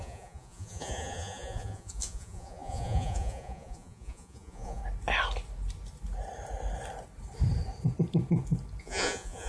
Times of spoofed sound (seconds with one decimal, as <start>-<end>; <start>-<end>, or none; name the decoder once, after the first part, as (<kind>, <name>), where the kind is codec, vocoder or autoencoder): 0.0-4.8 (vocoder, Vocos); 8.8-9.5